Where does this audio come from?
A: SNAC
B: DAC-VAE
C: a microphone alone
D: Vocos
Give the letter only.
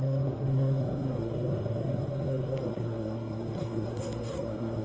A